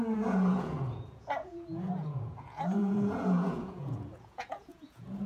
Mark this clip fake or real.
fake